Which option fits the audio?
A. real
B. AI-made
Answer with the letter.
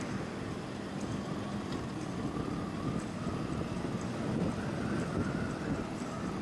A